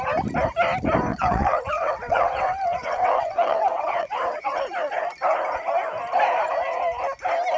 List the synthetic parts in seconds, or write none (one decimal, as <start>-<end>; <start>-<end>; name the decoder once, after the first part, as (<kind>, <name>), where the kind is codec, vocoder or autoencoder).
1.1-4.6 (vocoder, WaveNeXt)

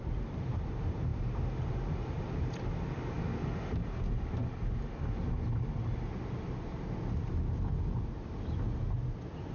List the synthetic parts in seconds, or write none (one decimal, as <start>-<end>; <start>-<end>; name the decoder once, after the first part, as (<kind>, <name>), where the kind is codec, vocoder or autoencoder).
none

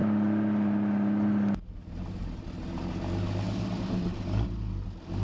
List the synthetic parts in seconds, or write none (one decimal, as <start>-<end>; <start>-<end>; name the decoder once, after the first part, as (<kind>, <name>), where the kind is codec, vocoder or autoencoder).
none

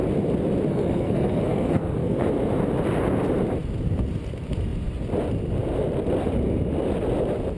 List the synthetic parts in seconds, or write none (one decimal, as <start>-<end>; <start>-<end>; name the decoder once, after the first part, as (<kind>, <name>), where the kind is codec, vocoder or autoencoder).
0.7-2.3 (codec, SNAC)

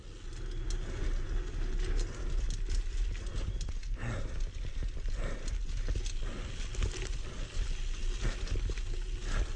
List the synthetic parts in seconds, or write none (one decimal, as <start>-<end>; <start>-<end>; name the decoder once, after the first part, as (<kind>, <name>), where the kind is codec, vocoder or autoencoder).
none

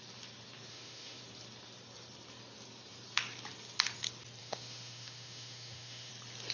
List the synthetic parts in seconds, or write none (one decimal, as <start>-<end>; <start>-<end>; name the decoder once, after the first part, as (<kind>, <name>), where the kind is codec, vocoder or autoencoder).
0.7-1.2 (autoencoder, DAC-VAE); 4.4-6.1